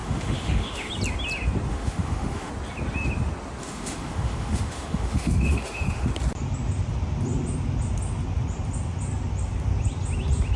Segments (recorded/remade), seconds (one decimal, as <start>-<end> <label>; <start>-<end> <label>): 0.0-0.9 remade; 0.9-1.7 recorded; 1.7-2.5 remade; 2.5-3.6 recorded; 3.6-6.1 remade; 6.1-10.6 recorded